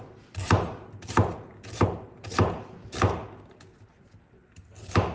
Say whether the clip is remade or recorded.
recorded